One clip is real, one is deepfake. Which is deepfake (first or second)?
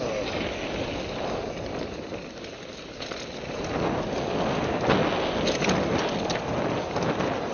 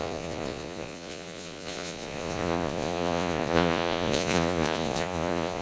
second